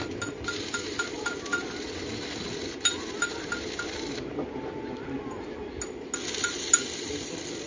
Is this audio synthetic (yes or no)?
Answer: no